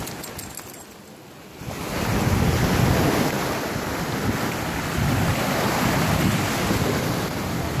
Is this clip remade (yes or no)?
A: no